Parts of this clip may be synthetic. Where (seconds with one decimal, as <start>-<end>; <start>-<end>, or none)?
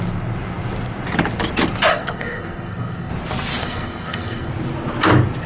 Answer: 1.9-3.1; 3.6-4.5